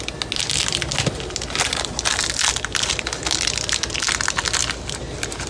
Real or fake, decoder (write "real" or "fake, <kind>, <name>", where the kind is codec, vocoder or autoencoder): real